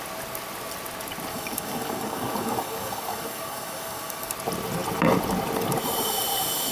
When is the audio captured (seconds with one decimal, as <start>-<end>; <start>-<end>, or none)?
0.0-1.3; 4.3-6.7